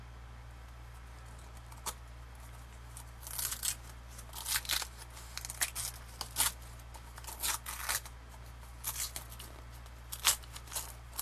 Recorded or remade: recorded